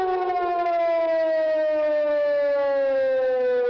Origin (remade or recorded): remade